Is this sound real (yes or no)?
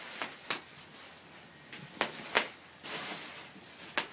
yes